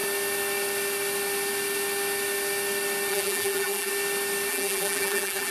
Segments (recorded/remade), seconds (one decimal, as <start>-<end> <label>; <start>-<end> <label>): 0.0-3.1 recorded; 3.1-3.9 remade; 3.9-4.5 recorded; 4.5-5.5 remade